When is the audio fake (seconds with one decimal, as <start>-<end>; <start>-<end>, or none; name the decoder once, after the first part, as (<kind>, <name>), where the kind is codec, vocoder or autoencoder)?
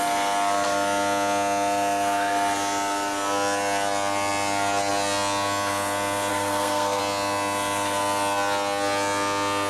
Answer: 6.3-7.0 (codec, SNAC)